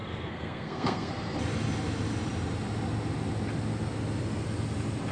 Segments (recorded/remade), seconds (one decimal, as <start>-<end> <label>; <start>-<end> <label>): 0.0-1.1 remade; 1.1-5.1 recorded